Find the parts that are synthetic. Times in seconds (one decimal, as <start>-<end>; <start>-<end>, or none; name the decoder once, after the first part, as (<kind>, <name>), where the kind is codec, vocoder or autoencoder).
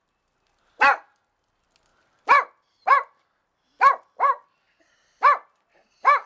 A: none